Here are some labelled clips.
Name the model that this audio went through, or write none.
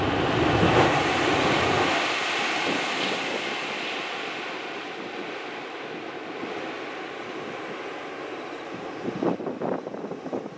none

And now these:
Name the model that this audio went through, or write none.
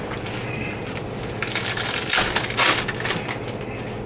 none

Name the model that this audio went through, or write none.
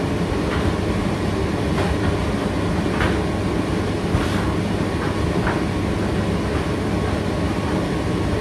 none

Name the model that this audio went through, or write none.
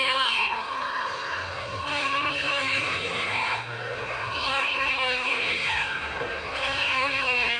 codec, SNAC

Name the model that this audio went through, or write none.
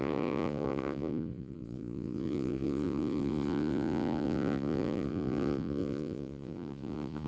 vocoder, Vocos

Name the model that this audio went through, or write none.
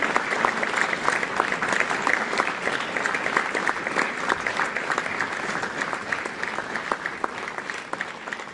none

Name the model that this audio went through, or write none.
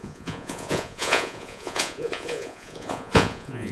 vocoder, Vocos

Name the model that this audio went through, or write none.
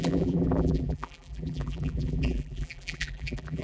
vocoder, BigVGAN v2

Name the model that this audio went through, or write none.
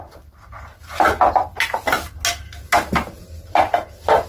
none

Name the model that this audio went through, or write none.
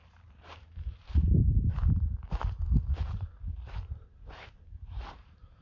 vocoder, BigVGAN v2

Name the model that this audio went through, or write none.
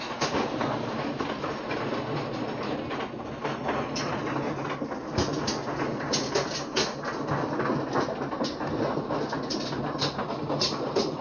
none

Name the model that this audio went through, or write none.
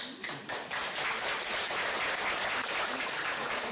none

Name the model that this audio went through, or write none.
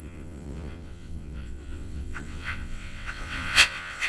vocoder, WaveNeXt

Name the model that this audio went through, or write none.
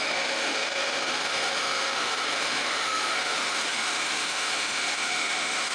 autoencoder, DAC-VAE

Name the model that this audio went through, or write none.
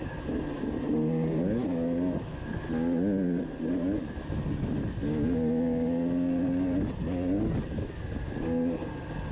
none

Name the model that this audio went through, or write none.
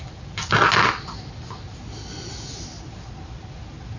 none